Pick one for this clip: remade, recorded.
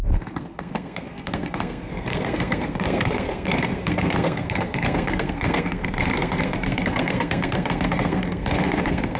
remade